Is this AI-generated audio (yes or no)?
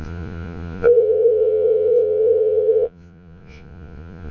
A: yes